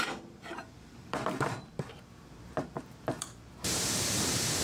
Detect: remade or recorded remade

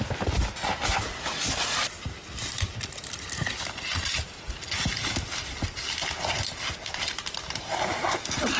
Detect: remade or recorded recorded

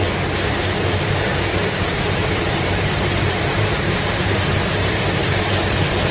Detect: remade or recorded remade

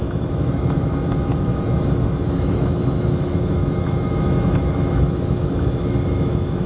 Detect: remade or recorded remade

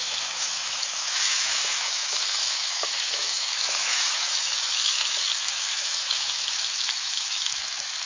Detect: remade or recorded remade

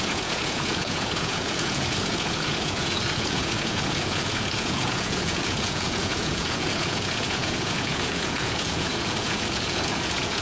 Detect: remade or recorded remade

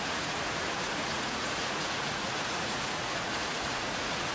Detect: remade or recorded remade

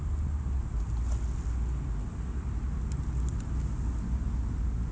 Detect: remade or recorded recorded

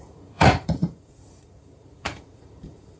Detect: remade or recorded remade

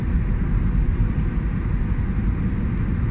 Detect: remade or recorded recorded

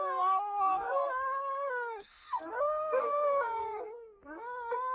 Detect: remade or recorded remade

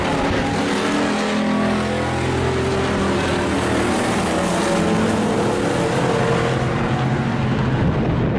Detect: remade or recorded recorded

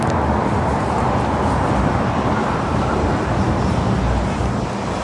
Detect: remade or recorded remade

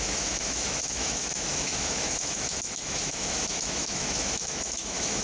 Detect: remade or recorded remade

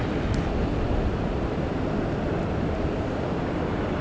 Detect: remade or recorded recorded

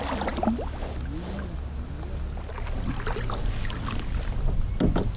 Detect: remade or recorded recorded